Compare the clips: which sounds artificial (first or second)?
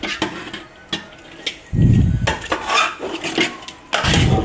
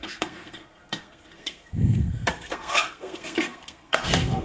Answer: second